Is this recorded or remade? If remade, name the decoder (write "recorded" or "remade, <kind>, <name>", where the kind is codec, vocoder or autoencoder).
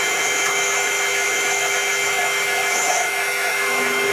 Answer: remade, autoencoder, DAC-VAE